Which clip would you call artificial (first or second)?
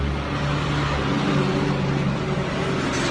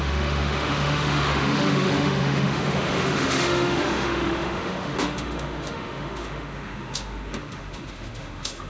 second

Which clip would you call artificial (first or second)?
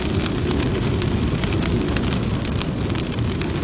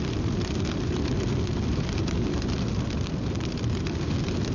second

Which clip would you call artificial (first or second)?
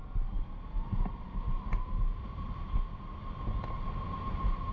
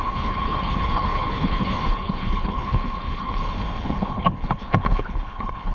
second